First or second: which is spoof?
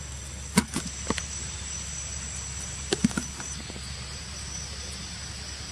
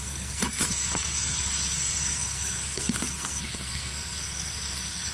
second